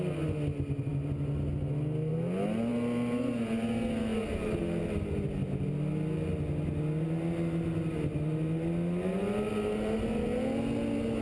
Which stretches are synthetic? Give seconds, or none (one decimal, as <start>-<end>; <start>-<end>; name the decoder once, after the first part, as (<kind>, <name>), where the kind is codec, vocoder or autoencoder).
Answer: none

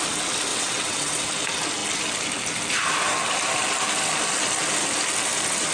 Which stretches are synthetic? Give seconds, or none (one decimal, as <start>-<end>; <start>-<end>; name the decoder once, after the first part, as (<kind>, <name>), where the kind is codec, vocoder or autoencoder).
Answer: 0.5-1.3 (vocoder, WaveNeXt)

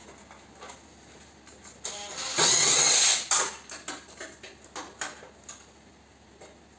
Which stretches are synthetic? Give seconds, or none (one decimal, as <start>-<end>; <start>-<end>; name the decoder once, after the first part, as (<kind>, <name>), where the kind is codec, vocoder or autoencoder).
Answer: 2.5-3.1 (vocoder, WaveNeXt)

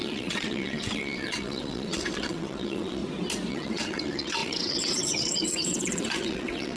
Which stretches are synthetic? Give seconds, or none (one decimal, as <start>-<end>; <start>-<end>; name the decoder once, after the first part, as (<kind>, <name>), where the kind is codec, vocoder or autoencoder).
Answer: 0.0-3.0 (vocoder, WaveNeXt); 3.5-6.8

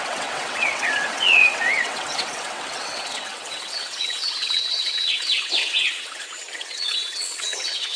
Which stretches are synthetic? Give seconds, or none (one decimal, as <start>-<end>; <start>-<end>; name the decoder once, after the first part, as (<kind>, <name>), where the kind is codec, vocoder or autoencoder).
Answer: 0.0-8.0 (vocoder, WaveNeXt)

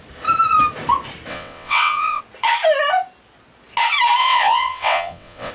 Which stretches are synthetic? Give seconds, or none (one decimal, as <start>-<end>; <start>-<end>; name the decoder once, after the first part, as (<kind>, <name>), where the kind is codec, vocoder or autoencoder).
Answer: 1.3-2.2 (vocoder, WaveNeXt); 4.2-5.5